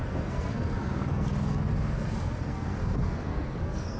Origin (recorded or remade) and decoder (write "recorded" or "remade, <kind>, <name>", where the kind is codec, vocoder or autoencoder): remade, codec, SNAC